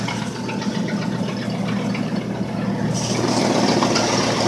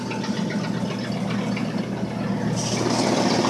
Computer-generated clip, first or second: first